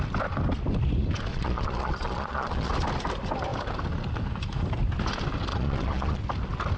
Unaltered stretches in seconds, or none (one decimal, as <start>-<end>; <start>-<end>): 0.0-1.3; 2.7-5.5; 6.2-6.8